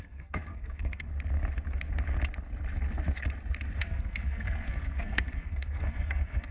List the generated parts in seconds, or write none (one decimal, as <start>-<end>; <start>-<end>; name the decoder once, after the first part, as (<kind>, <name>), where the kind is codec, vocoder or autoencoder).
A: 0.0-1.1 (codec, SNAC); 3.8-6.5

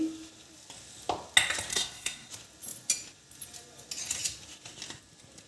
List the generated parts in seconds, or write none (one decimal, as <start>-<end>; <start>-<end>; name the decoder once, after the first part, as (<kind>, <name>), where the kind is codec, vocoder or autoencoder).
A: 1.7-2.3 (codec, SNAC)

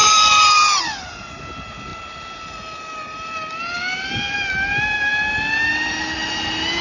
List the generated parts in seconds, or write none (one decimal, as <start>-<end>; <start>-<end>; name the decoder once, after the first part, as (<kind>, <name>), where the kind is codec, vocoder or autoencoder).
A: none